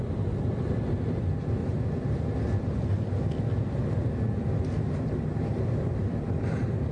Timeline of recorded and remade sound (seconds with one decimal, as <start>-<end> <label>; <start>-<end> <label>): 0.0-1.6 remade; 1.6-4.7 recorded; 4.7-6.9 remade